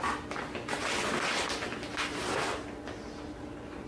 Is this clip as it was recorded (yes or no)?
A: yes